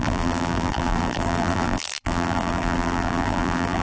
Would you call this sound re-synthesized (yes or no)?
yes